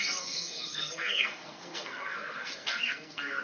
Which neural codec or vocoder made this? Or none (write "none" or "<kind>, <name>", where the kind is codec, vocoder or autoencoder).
codec, SNAC